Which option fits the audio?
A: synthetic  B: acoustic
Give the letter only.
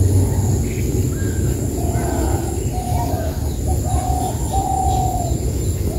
B